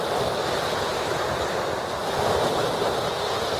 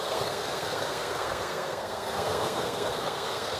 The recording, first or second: first